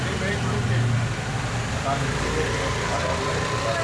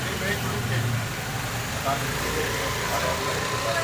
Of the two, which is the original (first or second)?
first